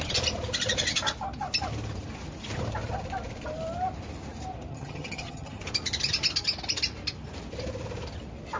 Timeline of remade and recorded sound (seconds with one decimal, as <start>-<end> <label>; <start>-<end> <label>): 0.0-4.7 recorded; 4.7-5.6 remade; 5.6-8.6 recorded